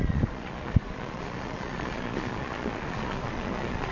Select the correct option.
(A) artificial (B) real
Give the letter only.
A